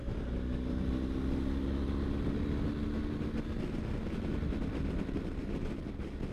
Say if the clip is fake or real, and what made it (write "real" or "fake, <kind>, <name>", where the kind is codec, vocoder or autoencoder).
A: real